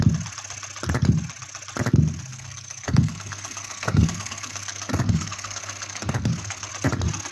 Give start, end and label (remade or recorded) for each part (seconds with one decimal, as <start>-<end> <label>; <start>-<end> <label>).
0.0-2.3 recorded; 2.3-6.7 remade; 6.7-7.3 recorded